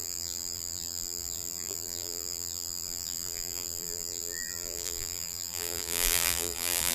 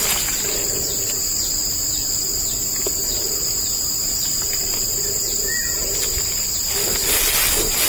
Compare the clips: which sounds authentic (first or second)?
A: second